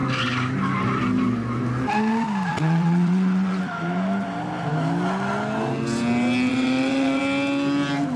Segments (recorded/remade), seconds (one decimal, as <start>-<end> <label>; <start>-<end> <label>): 0.0-2.5 recorded; 2.5-3.6 remade; 3.6-6.5 recorded; 6.5-7.2 remade; 7.2-8.2 recorded